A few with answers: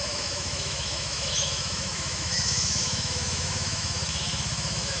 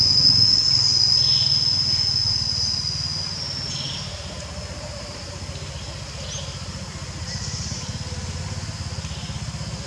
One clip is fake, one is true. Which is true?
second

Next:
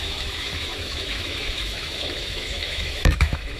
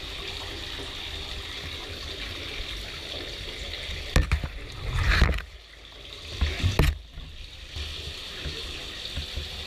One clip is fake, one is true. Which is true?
second